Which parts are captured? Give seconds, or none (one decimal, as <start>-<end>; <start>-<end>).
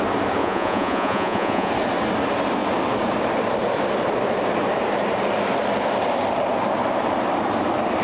0.0-0.4; 1.7-8.0